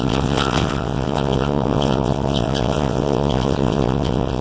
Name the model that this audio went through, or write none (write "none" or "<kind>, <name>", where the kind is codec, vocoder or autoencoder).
vocoder, WaveNeXt